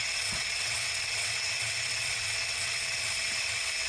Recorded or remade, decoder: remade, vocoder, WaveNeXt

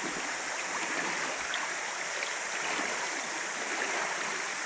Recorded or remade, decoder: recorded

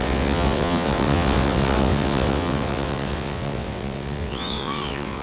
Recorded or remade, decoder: remade, vocoder, WaveNeXt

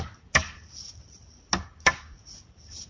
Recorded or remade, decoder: recorded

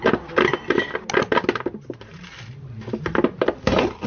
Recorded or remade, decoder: recorded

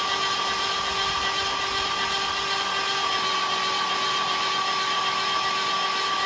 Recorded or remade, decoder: recorded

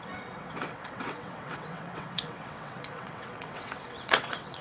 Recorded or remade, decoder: remade, vocoder, WaveNeXt